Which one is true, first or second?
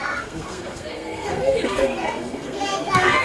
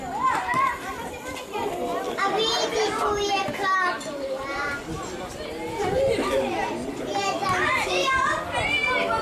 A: second